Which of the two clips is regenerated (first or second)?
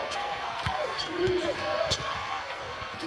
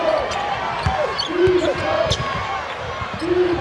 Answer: first